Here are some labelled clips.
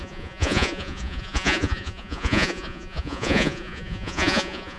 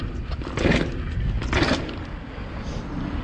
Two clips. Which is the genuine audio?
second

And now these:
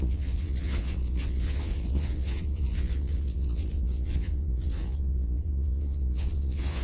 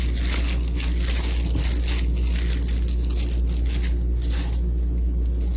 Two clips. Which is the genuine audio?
second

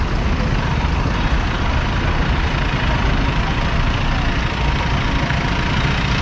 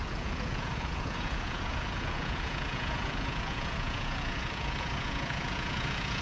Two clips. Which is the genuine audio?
first